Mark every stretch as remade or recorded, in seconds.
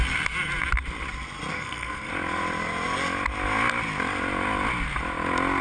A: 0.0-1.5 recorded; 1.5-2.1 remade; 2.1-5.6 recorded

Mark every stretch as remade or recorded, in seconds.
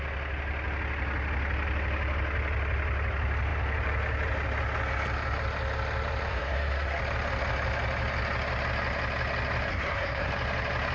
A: 0.0-6.3 recorded; 6.3-7.0 remade; 7.0-9.7 recorded; 9.7-10.3 remade; 10.3-10.9 recorded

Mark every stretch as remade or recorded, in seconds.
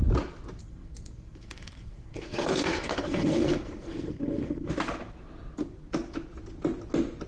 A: 0.0-0.6 recorded; 0.6-4.7 remade; 4.7-7.3 recorded